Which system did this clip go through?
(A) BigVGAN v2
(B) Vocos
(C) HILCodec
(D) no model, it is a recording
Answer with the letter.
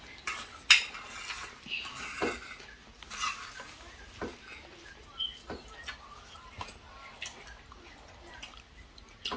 D